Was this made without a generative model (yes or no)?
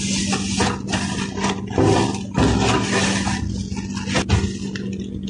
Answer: yes